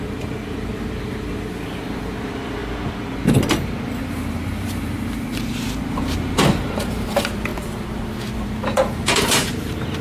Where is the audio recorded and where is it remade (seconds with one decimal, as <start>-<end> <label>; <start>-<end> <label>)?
0.0-2.6 remade; 2.6-4.0 recorded; 4.0-10.0 remade